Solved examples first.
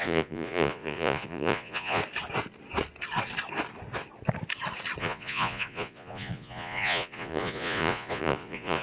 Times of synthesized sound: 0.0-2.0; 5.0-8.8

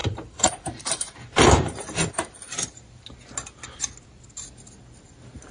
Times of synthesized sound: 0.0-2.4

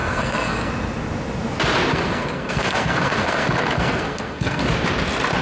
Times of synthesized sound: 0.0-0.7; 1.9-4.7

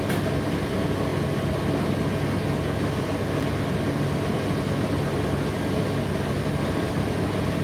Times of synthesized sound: none

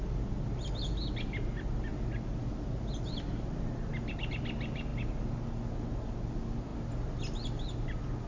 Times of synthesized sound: none

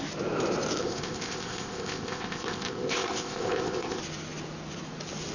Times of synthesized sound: 0.8-4.0

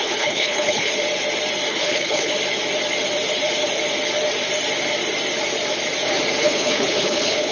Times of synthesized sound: 0.0-0.9; 1.7-2.3; 6.4-7.5

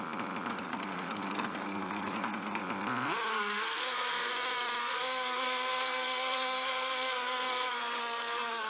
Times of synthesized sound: 0.5-2.6; 3.3-4.3; 4.8-8.7